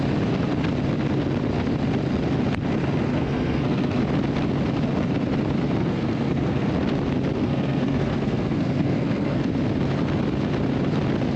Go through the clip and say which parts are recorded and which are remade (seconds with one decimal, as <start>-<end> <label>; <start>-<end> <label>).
0.0-3.1 recorded; 3.1-4.0 remade; 4.0-5.8 recorded; 5.8-6.7 remade; 6.7-7.4 recorded; 7.4-9.4 remade; 9.4-11.4 recorded